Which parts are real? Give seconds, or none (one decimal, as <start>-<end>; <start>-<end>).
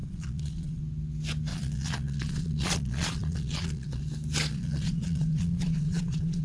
0.8-1.5; 4.0-4.5